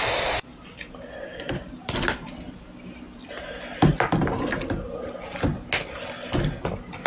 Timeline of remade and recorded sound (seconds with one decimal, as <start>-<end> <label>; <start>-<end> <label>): 0.0-0.5 recorded; 0.5-1.9 remade; 1.9-7.1 recorded